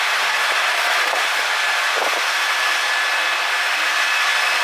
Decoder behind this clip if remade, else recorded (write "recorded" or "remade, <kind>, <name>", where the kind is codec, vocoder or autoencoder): recorded